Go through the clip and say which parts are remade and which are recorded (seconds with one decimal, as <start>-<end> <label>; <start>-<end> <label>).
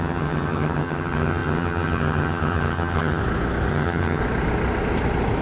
0.0-3.2 remade; 3.2-3.7 recorded; 3.7-4.2 remade; 4.2-5.4 recorded